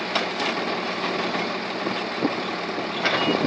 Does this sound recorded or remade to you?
recorded